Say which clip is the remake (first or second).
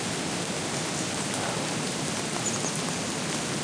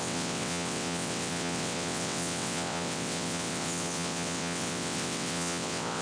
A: second